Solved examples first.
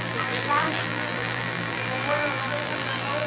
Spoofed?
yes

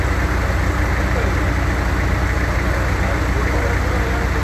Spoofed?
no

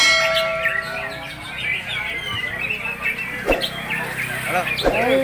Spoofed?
no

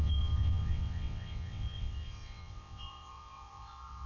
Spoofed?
yes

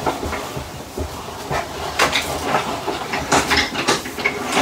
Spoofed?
yes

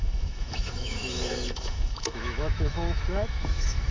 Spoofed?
yes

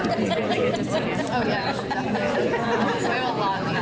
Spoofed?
no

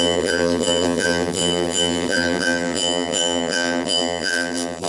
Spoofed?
yes